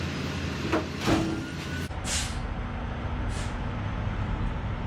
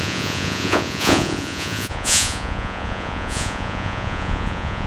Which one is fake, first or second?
second